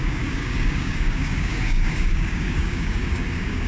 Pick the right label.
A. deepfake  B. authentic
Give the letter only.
A